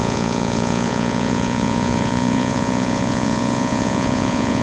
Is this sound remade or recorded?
remade